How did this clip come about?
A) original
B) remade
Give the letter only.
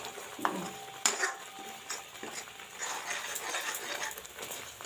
B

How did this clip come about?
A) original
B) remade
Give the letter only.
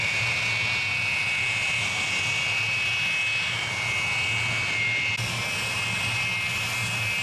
A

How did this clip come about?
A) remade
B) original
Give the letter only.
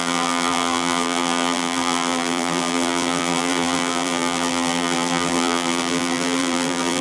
A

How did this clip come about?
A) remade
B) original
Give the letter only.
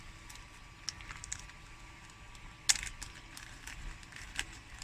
B